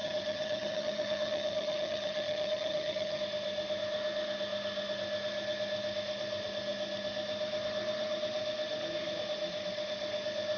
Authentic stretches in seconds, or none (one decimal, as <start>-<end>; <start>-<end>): 3.2-10.6

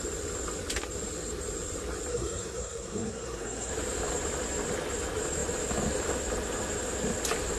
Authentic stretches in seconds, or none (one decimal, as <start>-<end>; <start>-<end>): 0.0-2.1; 3.7-7.6